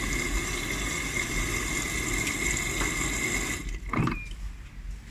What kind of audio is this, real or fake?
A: real